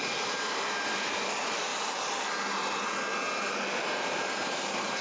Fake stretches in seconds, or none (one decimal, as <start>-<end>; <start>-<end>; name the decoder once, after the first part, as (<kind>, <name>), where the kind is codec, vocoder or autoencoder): 0.0-1.7 (vocoder, BigVGAN v2); 3.5-5.0